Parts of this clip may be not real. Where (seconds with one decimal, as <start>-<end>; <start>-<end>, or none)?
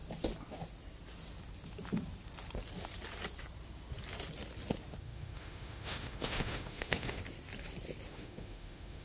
5.0-7.2; 8.1-9.0